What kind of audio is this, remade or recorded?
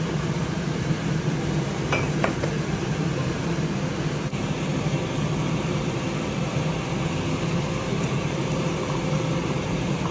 remade